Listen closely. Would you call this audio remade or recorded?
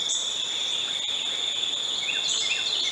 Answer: recorded